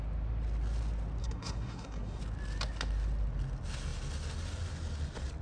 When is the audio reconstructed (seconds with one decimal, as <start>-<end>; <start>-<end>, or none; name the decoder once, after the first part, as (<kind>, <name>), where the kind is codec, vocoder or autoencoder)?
1.2-2.2 (codec, SNAC)